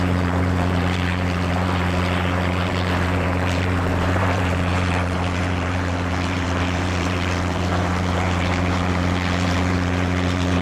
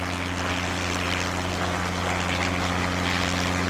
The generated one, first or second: first